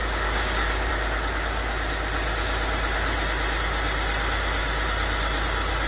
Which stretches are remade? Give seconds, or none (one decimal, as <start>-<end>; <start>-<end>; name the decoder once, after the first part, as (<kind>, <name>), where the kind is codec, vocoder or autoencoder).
0.0-0.9 (codec, DAC)